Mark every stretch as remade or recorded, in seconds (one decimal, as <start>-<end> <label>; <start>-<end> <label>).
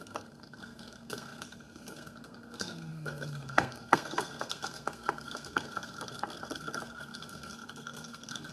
0.0-8.5 remade